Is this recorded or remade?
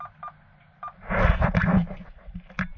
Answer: recorded